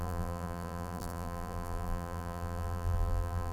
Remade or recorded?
remade